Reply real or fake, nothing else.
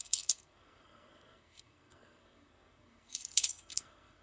fake